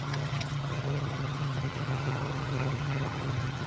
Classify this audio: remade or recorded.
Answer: remade